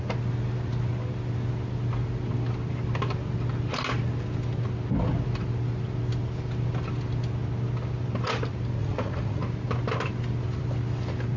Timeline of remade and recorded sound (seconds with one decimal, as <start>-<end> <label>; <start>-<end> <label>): 0.0-8.8 recorded; 8.8-9.4 remade; 9.4-11.4 recorded